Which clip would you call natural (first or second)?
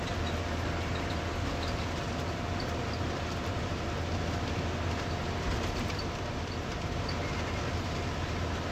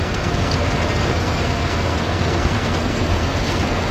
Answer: first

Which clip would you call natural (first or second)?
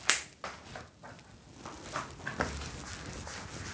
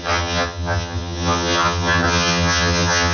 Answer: first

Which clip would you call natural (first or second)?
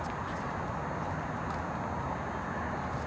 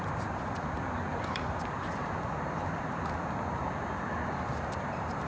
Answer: first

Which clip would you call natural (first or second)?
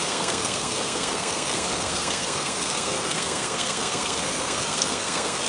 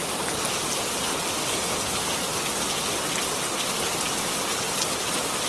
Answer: second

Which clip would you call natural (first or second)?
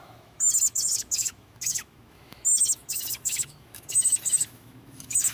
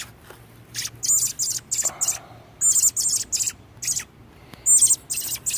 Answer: second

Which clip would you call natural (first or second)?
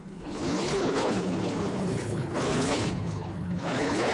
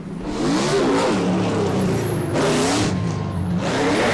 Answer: second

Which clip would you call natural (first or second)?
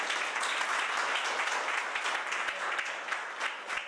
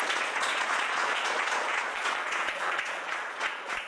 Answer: first